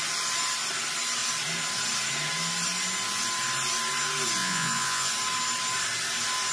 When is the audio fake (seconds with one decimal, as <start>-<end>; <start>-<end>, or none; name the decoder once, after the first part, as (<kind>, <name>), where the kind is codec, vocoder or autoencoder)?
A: 4.4-5.1 (vocoder, Vocos)